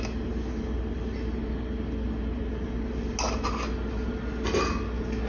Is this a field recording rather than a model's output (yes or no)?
yes